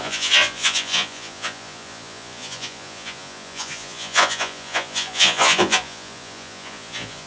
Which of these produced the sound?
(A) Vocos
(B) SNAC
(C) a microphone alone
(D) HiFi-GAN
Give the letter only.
A